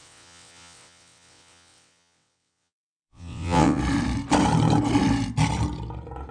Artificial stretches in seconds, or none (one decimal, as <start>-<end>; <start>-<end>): 0.0-3.8